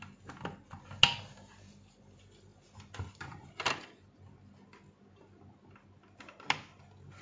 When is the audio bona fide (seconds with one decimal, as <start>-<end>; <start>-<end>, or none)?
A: 0.0-7.2